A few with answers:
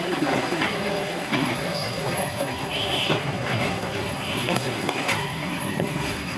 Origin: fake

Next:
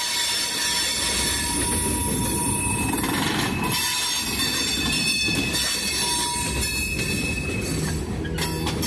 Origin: real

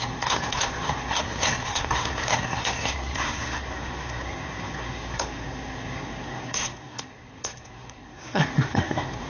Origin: fake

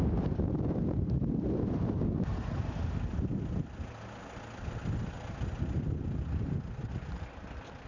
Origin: real